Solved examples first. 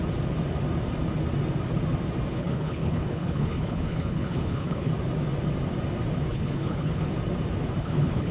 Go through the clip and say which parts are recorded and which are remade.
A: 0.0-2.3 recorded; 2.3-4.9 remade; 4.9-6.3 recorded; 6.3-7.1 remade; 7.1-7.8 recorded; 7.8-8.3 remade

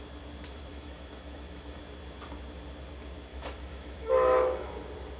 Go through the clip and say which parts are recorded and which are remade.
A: 0.0-0.7 recorded; 0.7-1.8 remade; 1.8-3.3 recorded; 3.3-4.7 remade; 4.7-5.2 recorded

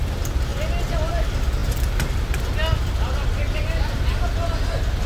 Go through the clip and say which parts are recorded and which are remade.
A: 0.0-5.1 recorded

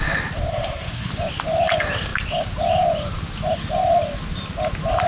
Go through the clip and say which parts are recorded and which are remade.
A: 0.0-0.5 recorded; 0.5-1.1 remade; 1.1-5.1 recorded

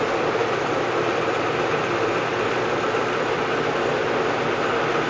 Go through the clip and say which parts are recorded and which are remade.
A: 0.0-5.1 recorded